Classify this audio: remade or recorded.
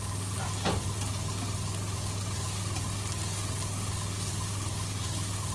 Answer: recorded